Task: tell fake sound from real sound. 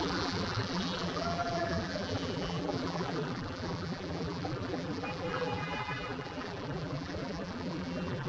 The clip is fake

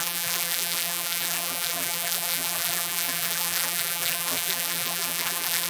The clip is fake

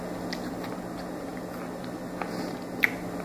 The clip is real